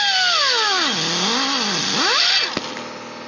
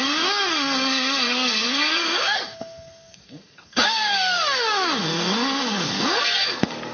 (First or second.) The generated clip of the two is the second